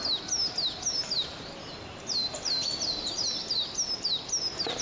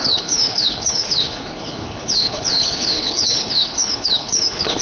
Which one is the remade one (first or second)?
second